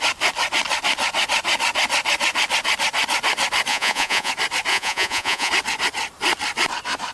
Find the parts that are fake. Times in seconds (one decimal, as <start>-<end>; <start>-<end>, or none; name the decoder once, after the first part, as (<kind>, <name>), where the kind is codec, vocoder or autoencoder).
3.7-4.3 (vocoder, Vocos); 4.7-5.5